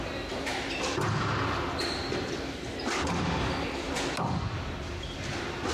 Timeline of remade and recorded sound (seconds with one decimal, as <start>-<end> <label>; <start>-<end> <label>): 0.0-5.7 recorded